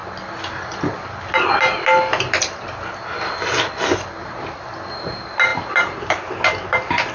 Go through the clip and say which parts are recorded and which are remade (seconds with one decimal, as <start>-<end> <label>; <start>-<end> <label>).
0.0-7.1 recorded